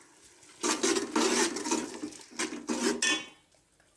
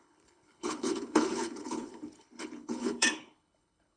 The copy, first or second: second